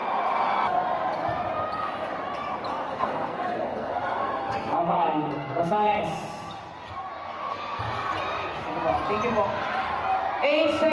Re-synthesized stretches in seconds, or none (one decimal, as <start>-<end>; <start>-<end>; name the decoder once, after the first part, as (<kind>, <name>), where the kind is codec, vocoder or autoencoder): 2.9-6.0 (codec, SNAC); 7.2-7.8